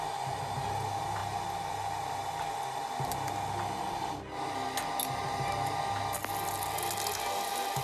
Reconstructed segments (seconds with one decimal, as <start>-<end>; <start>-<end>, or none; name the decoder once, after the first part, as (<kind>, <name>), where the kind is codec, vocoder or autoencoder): none